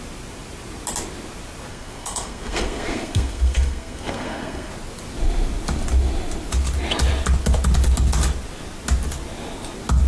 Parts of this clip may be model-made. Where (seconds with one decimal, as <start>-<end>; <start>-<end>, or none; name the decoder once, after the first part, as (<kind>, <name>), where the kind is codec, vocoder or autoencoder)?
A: 1.7-4.7 (codec, SNAC)